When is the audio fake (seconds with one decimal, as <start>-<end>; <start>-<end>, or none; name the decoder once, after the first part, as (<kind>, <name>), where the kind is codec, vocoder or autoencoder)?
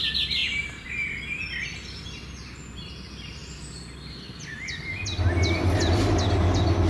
0.4-0.9 (vocoder, BigVGAN v2)